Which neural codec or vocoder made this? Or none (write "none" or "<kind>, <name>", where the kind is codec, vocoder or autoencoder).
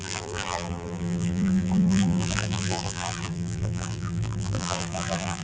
vocoder, BigVGAN v2